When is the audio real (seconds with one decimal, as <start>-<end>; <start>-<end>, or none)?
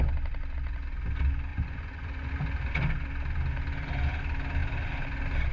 0.0-1.5; 2.3-5.5